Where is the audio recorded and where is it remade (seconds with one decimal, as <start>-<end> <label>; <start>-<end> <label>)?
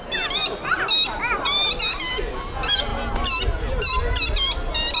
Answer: 0.0-5.0 recorded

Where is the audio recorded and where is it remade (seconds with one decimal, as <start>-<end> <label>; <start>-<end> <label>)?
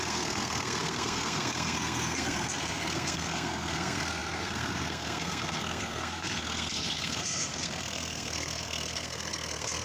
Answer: 0.0-9.8 remade